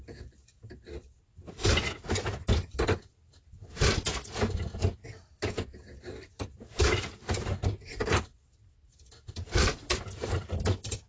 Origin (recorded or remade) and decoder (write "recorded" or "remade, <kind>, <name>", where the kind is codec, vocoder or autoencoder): recorded